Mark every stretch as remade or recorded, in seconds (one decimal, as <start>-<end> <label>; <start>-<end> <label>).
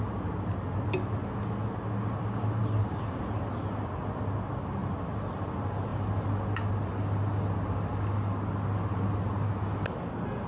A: 0.0-10.5 recorded